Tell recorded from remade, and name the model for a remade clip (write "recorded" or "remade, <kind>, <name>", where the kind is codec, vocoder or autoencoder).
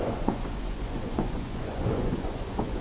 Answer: remade, vocoder, Vocos